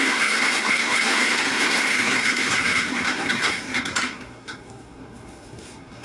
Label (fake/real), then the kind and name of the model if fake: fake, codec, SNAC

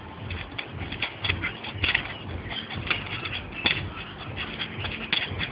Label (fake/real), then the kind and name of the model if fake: real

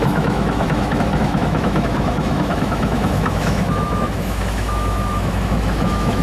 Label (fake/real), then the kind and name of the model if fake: fake, autoencoder, DAC-VAE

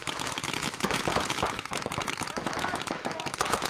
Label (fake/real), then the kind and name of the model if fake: fake, autoencoder, DAC-VAE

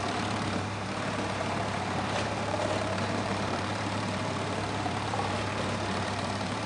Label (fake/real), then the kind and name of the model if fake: fake, vocoder, BigVGAN v2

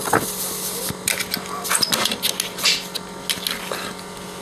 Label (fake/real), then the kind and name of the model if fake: real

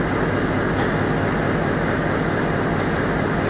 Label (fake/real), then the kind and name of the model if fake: real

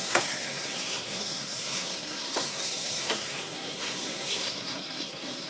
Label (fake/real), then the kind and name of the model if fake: fake, codec, SNAC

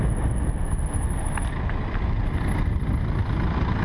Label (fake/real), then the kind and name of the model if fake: real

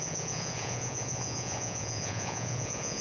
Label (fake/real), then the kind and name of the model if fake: fake, vocoder, Vocos